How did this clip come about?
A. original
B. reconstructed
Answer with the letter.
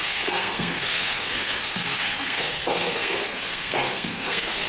B